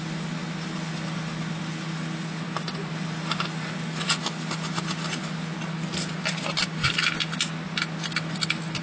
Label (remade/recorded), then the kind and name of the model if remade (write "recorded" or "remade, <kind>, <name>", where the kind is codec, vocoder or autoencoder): recorded